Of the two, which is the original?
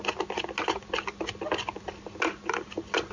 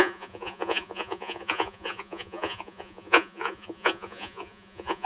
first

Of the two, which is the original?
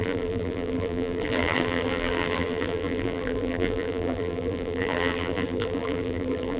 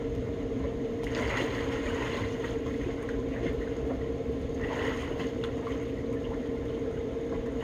second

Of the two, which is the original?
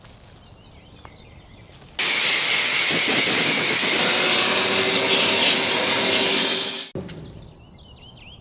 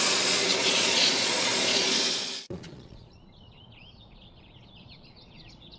first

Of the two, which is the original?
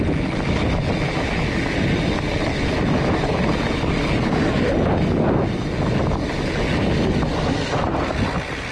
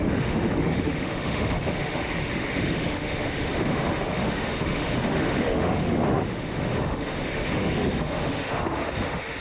first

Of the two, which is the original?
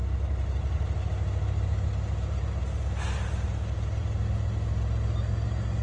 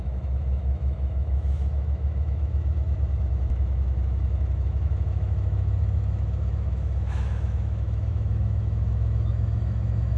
first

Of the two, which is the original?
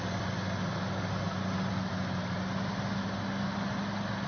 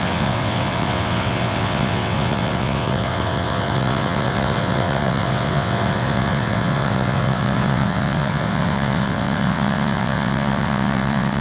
first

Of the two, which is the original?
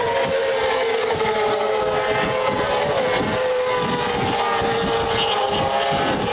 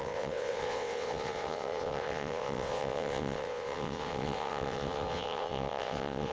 first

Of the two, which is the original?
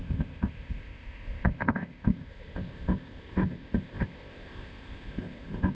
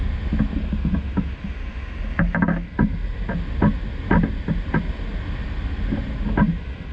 second